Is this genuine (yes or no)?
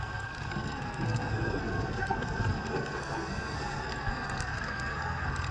no